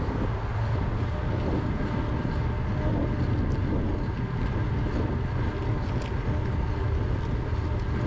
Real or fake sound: real